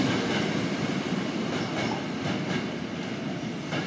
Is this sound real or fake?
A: real